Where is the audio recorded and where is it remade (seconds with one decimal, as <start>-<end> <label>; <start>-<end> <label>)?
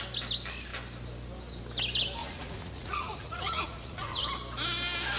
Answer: 0.0-2.2 recorded; 2.2-4.2 remade; 4.2-5.2 recorded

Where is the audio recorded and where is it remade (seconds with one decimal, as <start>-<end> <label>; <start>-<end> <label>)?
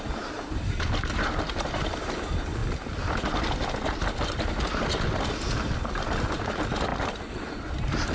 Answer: 0.0-8.1 recorded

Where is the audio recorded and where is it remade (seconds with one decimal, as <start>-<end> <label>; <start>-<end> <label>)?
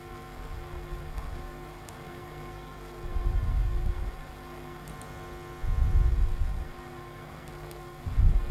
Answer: 0.0-4.9 remade; 4.9-6.1 recorded; 6.1-8.5 remade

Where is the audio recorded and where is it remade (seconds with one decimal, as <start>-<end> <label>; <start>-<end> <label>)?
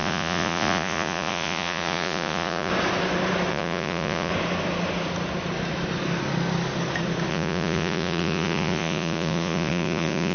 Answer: 0.0-2.7 remade; 2.7-3.5 recorded; 3.5-4.3 remade; 4.3-7.3 recorded; 7.3-10.3 remade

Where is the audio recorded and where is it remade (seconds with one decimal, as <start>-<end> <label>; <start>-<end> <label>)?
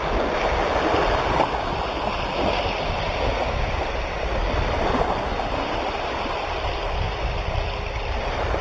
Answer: 0.0-8.6 recorded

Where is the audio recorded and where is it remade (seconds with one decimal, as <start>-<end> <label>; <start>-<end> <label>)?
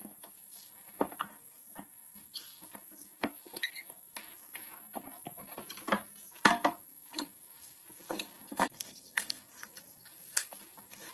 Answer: 0.0-5.6 remade; 5.6-6.3 recorded; 6.3-11.1 remade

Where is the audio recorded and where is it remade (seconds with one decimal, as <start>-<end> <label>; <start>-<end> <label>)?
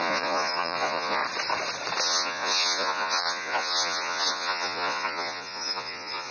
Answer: 0.0-1.2 remade; 1.2-2.0 recorded; 2.0-6.3 remade